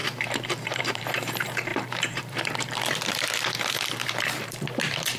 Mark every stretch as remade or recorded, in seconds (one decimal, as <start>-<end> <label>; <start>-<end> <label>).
0.0-5.2 remade